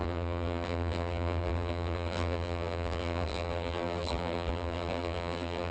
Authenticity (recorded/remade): remade